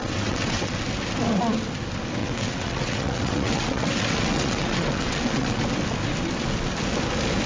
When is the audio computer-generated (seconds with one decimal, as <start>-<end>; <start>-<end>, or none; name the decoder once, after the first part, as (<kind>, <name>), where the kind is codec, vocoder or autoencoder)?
0.0-0.7 (vocoder, WaveNeXt); 2.2-5.6